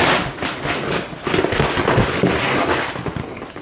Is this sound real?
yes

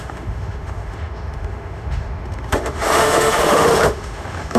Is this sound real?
no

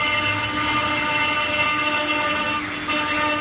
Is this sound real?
yes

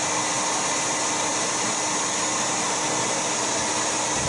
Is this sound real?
yes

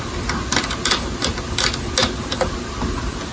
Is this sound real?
yes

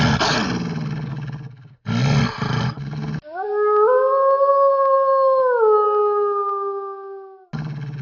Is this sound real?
yes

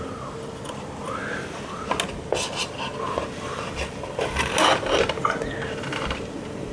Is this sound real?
yes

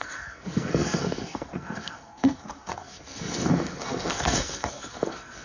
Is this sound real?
no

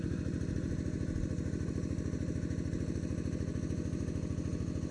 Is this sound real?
yes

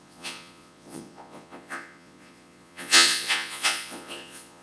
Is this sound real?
no